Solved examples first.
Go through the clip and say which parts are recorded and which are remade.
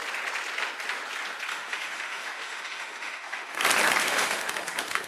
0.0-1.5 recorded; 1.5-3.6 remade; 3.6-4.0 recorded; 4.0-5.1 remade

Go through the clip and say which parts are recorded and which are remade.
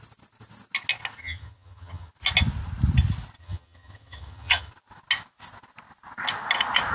0.0-1.2 recorded; 1.2-2.1 remade; 2.1-3.4 recorded; 3.4-4.7 remade; 4.7-6.9 recorded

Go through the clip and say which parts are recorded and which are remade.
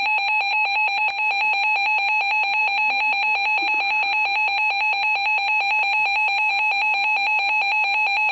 0.0-0.5 recorded; 0.5-1.0 remade; 1.0-8.3 recorded